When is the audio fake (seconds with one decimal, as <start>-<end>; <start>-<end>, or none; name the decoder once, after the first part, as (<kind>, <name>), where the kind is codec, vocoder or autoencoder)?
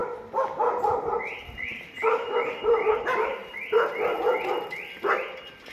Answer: 1.4-3.4 (vocoder, BigVGAN v2); 5.0-5.7